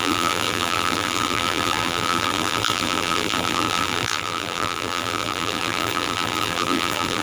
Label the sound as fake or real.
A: fake